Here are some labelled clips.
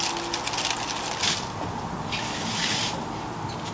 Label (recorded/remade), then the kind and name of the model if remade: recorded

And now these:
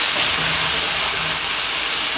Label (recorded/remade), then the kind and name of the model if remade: recorded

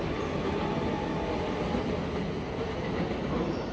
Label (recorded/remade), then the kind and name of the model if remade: recorded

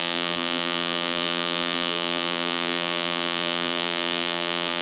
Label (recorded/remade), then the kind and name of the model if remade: remade, vocoder, BigVGAN v2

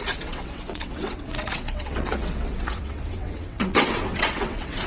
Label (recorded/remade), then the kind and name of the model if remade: remade, vocoder, WaveNeXt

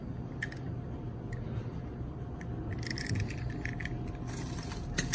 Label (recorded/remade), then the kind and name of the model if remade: recorded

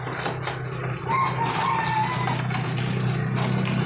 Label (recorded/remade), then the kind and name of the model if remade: recorded